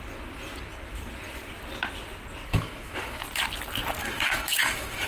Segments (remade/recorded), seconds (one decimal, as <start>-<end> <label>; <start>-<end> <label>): 0.0-2.5 recorded; 2.5-3.2 remade; 3.2-4.0 recorded; 4.0-5.1 remade